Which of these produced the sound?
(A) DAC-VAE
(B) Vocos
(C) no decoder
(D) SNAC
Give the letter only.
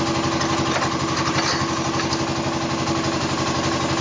C